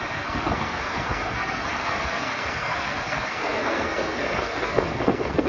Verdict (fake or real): fake